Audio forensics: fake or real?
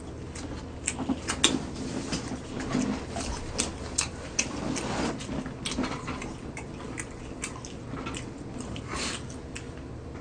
real